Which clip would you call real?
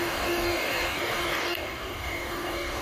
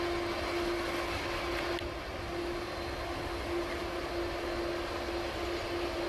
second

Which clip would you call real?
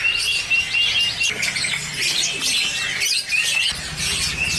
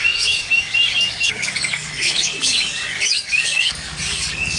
first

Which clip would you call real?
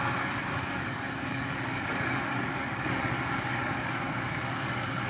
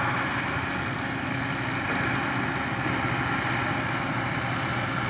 second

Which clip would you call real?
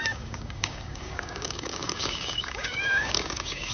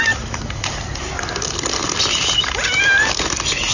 second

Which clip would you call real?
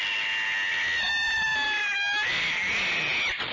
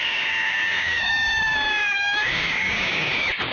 first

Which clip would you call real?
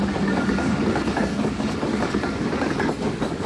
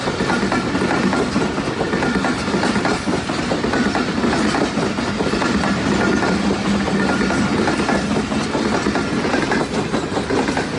second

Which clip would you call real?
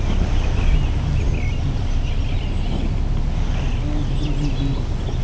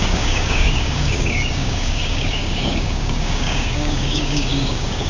first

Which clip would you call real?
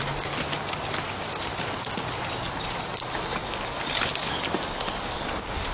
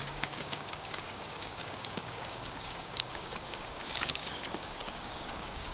first